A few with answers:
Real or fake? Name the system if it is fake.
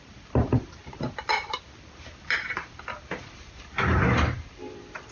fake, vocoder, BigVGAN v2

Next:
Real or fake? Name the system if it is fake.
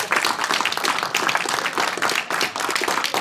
real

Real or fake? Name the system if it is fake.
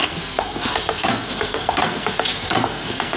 fake, codec, SNAC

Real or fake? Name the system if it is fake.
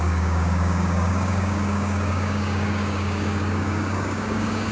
fake, codec, DAC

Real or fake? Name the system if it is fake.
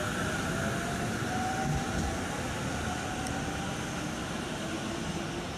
real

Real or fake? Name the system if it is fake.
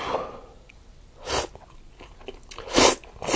real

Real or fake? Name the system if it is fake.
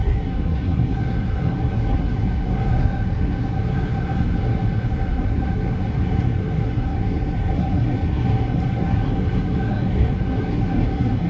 fake, codec, SNAC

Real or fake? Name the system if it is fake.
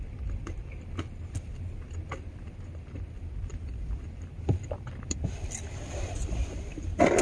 fake, vocoder, BigVGAN v2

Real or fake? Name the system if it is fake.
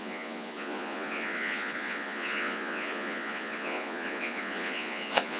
fake, vocoder, Vocos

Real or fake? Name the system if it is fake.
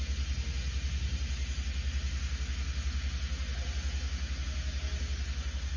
real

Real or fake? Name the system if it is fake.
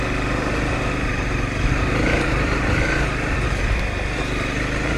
real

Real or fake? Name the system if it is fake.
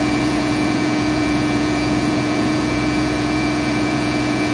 fake, vocoder, Vocos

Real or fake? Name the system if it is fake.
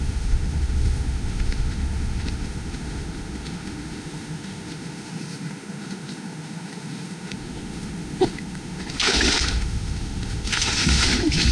fake, autoencoder, DAC-VAE